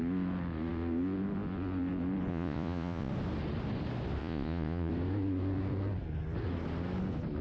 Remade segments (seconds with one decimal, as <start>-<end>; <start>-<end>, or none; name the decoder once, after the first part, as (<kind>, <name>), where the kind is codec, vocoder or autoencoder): 2.3-3.1 (vocoder, Vocos); 4.2-4.9